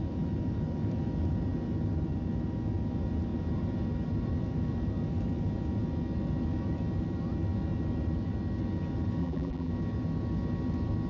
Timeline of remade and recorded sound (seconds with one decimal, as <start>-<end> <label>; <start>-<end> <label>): 0.0-9.2 recorded; 9.2-9.7 remade; 9.7-11.1 recorded